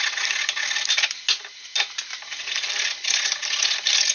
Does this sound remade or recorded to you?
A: recorded